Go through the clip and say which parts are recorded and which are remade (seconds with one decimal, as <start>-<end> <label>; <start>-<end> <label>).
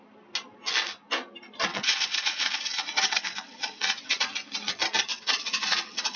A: 0.0-1.7 recorded; 1.7-4.2 remade; 4.2-5.1 recorded; 5.1-6.2 remade